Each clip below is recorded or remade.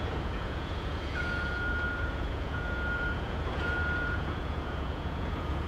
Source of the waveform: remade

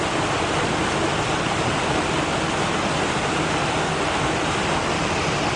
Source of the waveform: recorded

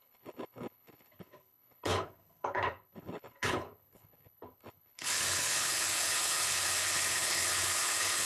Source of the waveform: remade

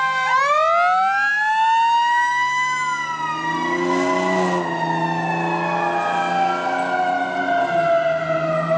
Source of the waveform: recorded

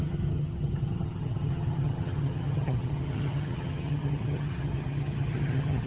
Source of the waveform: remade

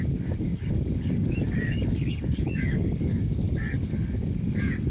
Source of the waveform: remade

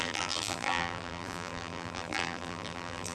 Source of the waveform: remade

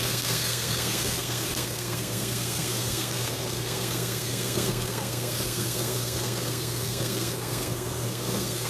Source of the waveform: remade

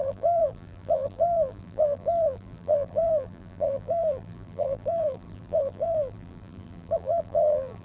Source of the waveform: remade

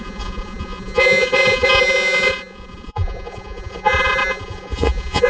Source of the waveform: remade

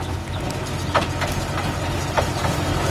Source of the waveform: recorded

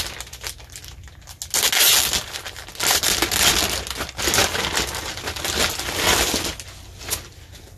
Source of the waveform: recorded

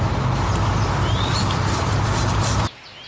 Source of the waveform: remade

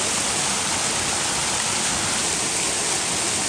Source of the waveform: recorded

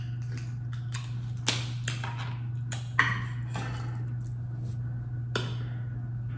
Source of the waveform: recorded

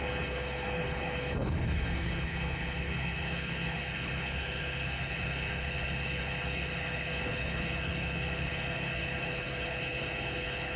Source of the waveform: remade